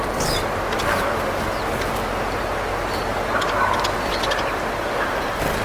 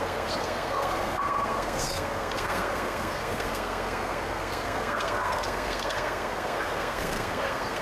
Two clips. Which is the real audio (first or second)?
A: first